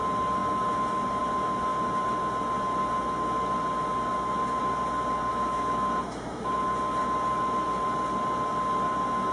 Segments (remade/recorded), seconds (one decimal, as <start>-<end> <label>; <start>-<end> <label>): 0.0-4.1 recorded; 4.1-4.6 remade; 4.6-5.3 recorded; 5.3-6.5 remade; 6.5-9.3 recorded